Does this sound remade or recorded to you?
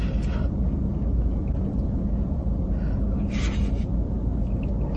recorded